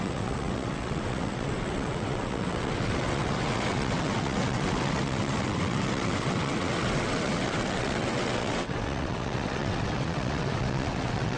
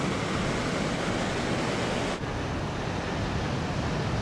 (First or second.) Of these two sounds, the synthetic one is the first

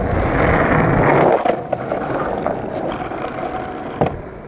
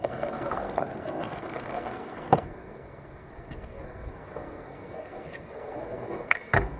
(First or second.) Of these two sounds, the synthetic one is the second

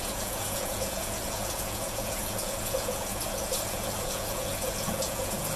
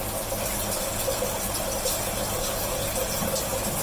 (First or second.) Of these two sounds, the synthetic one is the first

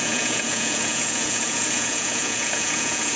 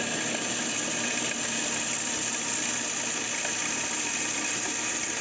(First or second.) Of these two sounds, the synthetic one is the first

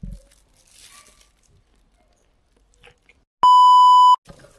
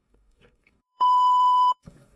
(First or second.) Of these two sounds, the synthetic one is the second